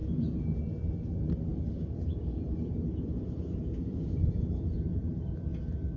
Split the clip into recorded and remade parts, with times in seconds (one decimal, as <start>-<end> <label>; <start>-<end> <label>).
0.0-0.6 remade; 0.6-1.5 recorded; 1.5-5.1 remade; 5.1-6.0 recorded